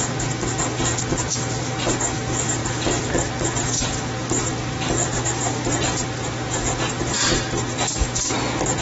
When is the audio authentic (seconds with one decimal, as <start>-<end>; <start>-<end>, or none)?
0.0-8.8